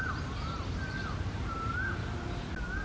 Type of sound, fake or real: real